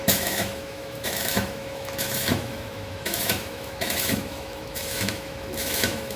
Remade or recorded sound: remade